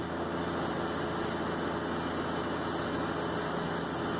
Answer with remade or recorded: recorded